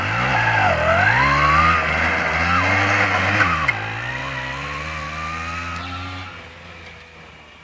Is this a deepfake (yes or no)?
no